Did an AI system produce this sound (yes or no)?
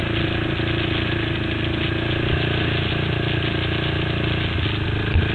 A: no